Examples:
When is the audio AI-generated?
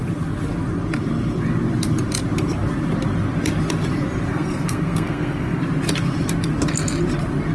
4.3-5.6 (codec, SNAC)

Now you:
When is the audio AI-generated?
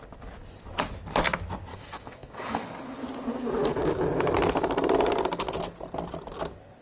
1.7-2.7 (autoencoder, DAC-VAE)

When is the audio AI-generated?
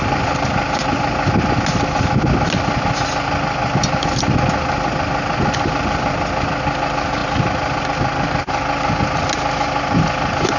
none